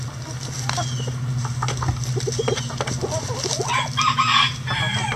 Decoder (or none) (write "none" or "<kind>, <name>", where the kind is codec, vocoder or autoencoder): none